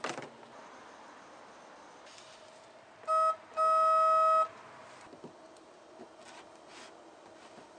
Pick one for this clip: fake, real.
real